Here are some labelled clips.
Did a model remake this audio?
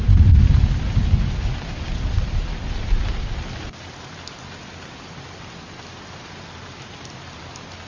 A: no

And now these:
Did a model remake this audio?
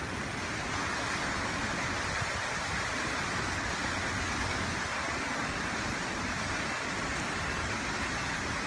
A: no